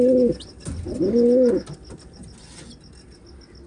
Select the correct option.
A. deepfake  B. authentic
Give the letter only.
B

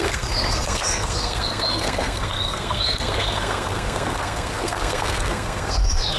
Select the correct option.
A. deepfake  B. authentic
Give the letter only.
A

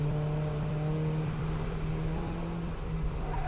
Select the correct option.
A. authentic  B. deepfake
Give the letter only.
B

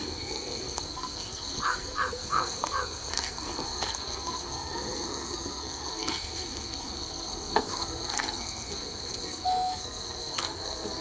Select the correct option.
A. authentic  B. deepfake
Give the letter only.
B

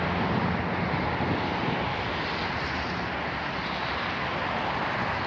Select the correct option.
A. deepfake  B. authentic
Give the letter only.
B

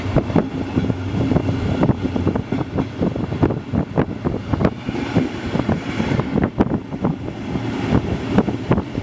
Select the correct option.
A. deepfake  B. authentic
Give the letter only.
A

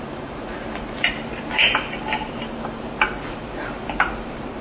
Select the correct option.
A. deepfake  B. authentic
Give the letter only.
A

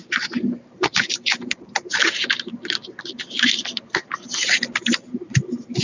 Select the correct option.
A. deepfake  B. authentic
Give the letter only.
A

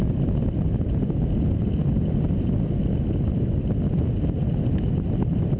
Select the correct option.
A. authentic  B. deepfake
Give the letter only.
A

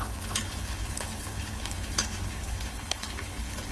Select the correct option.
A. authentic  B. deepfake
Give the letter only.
B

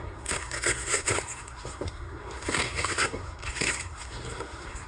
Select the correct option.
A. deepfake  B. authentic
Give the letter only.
A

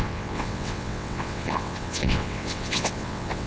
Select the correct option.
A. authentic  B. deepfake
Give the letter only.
B